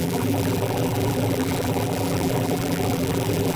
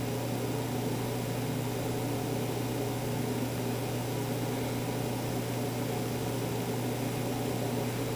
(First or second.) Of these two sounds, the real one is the second